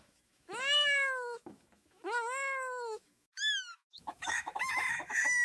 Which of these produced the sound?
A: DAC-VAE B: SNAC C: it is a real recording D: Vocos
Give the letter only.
A